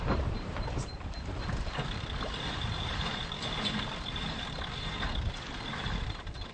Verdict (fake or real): fake